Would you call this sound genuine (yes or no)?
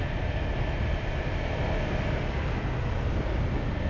yes